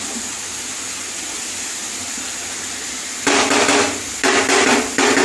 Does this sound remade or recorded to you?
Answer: recorded